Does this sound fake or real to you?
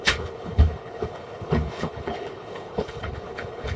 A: fake